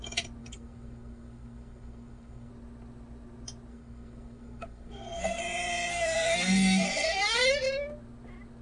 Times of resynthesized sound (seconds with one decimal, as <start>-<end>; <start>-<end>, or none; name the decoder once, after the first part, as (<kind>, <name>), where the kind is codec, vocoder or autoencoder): 0.4-2.5 (codec, SNAC); 3.7-5.4; 5.9-7.4